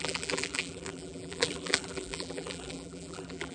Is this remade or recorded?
remade